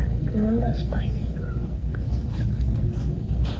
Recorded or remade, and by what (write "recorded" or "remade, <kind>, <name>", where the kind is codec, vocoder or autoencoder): remade, codec, SNAC